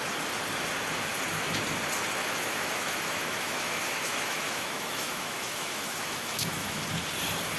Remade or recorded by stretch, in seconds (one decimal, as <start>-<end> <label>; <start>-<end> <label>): 0.0-2.2 recorded; 2.2-6.8 remade; 6.8-7.6 recorded